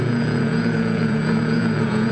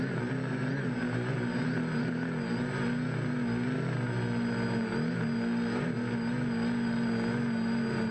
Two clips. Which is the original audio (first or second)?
second